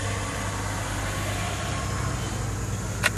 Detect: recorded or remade recorded